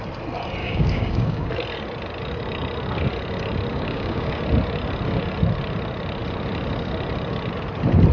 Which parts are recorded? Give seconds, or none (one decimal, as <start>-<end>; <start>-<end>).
0.0-0.6; 1.5-3.7; 4.4-8.1